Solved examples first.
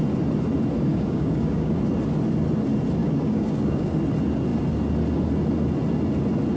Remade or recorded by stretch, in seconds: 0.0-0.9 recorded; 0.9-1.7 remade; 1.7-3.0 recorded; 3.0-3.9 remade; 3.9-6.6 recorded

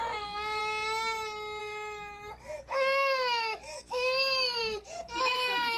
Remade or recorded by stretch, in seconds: 0.0-0.6 remade; 0.6-1.6 recorded; 1.6-5.8 remade

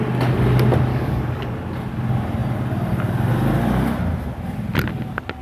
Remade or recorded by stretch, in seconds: 0.0-0.9 recorded; 0.9-1.5 remade; 1.5-5.4 recorded

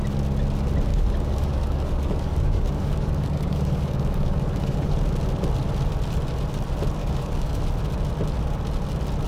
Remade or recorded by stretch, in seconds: 0.0-0.9 recorded; 0.9-4.9 remade; 4.9-7.0 recorded; 7.0-7.6 remade; 7.6-9.3 recorded

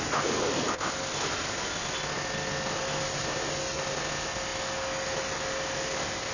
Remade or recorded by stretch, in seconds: 0.0-6.3 recorded

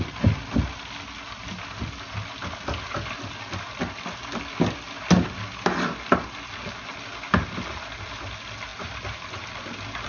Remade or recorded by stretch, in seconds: 0.0-10.1 recorded